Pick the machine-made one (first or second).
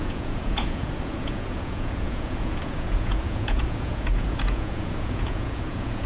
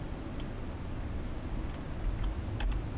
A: first